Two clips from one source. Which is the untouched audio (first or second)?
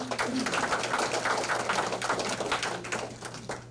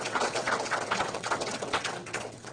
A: first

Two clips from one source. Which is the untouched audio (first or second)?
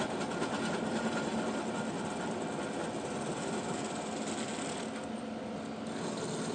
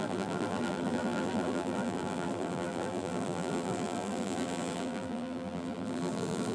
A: first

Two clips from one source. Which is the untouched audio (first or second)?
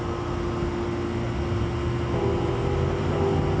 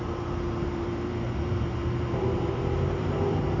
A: first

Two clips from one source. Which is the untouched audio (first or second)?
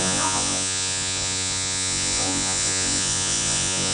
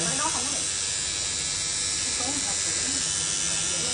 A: second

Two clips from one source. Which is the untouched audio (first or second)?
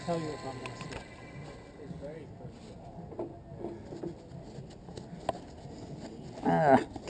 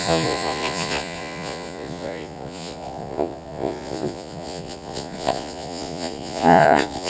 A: first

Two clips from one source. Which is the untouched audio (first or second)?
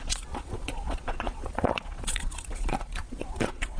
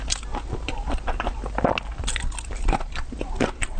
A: second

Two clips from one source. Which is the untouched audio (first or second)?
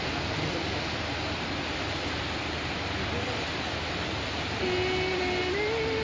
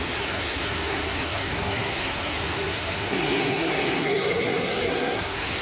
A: first